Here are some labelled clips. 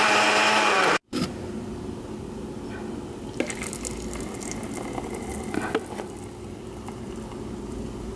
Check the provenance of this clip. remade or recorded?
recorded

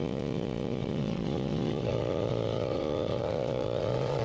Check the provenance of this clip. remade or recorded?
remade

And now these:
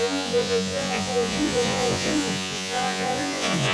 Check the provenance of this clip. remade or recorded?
remade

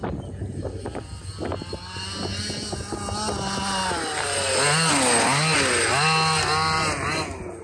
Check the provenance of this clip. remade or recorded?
recorded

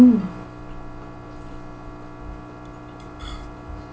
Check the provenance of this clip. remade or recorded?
recorded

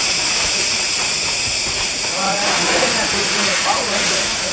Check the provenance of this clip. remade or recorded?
remade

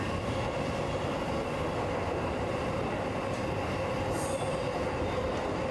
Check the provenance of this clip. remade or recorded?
recorded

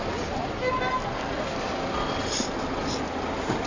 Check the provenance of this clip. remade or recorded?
recorded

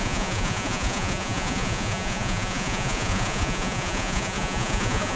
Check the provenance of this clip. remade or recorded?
remade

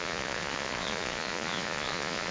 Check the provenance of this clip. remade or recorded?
remade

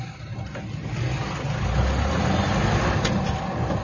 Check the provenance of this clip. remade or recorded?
recorded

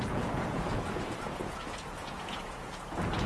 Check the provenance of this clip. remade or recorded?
remade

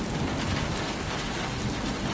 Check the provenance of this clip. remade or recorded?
recorded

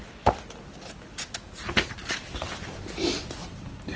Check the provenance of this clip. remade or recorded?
recorded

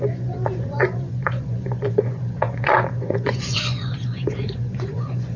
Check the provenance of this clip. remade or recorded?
remade